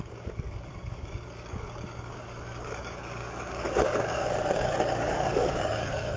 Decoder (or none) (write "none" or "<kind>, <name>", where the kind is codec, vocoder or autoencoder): codec, DAC